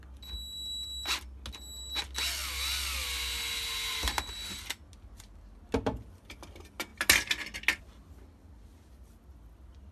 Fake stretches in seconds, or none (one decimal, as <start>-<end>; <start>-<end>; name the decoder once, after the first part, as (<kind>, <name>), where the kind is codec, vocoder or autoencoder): none